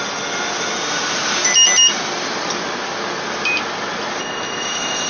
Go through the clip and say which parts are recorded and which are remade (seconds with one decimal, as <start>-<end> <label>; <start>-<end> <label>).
0.0-4.2 recorded; 4.2-5.1 remade